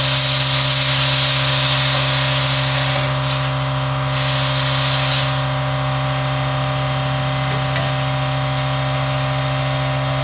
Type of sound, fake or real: real